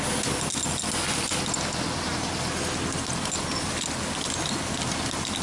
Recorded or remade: recorded